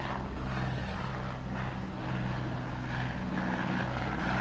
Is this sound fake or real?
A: real